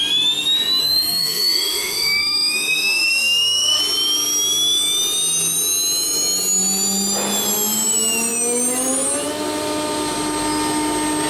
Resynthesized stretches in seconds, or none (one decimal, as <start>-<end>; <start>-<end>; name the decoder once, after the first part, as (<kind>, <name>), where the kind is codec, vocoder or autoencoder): 0.8-3.8 (autoencoder, DAC-VAE)